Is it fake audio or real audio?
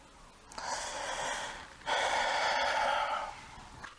real